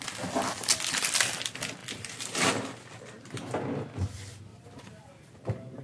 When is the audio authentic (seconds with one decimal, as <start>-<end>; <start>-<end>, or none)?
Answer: 0.0-1.8; 2.5-4.5

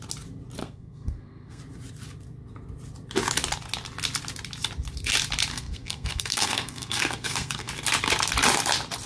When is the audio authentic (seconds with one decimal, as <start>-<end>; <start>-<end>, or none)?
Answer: 0.0-0.6; 1.6-5.5; 7.7-9.1